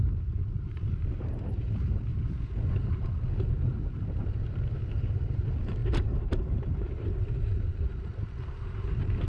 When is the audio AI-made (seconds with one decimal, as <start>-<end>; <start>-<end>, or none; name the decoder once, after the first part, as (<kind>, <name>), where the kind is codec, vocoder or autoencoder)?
0.0-2.1 (vocoder, BigVGAN v2); 3.3-9.3